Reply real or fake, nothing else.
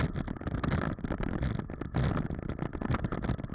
real